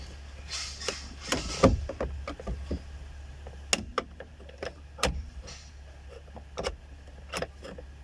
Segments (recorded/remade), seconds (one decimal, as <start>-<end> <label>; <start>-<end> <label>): 0.0-3.9 recorded; 3.9-5.7 remade; 5.7-8.0 recorded